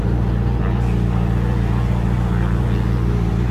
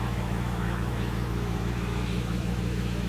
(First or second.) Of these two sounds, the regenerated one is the second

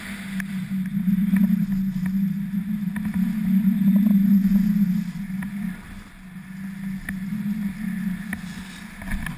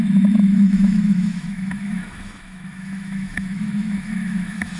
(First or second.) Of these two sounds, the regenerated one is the second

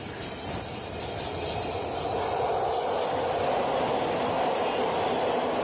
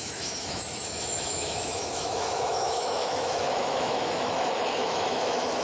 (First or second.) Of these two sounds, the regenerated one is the second